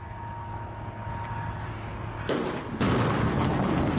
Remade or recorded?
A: recorded